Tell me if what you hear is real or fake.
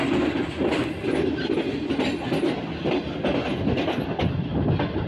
real